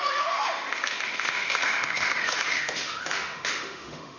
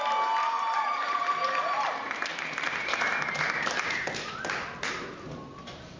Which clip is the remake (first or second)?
first